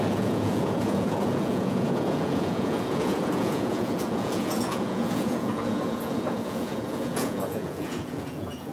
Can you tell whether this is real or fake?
fake